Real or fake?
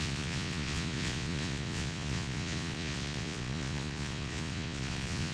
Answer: fake